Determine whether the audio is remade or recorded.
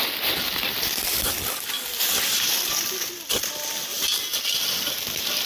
recorded